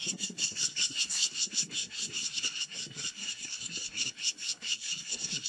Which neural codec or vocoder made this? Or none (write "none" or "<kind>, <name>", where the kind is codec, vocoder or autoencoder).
codec, SNAC